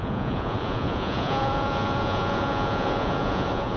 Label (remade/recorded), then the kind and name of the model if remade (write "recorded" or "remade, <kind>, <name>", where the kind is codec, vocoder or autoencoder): remade, vocoder, Vocos